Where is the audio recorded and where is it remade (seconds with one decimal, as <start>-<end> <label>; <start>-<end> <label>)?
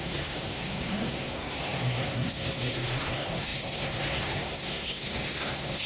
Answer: 0.0-5.9 remade